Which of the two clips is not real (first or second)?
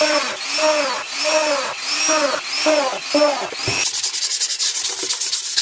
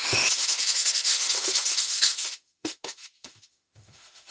second